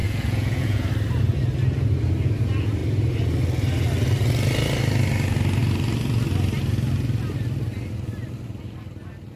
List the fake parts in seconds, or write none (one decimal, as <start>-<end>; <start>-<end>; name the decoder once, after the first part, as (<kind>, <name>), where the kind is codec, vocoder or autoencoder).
0.0-0.9 (vocoder, Vocos)